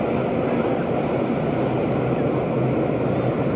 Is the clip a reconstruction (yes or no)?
no